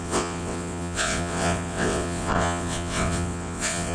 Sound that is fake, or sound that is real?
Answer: fake